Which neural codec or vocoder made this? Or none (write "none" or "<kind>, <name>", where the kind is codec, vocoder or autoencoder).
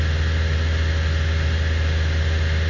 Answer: none